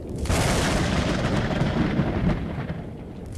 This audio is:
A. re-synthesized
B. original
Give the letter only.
B